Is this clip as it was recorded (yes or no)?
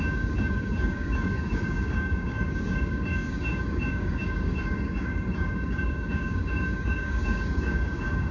no